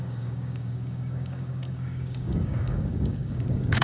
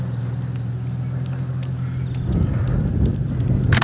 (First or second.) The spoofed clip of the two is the first